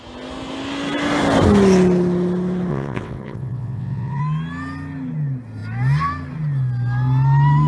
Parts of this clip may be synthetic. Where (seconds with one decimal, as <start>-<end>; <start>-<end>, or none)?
2.7-4.2

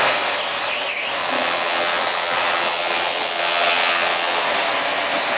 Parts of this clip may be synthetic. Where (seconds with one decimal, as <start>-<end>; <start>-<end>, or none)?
1.2-4.4